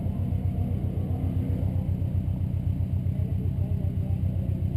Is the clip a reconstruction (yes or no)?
no